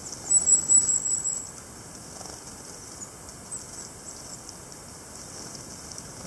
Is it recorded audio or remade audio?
recorded